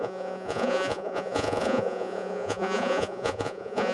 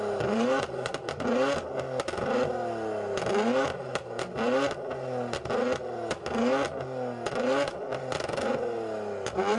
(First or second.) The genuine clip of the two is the second